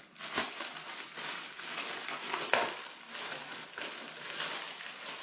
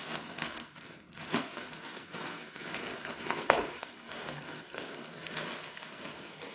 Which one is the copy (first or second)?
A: second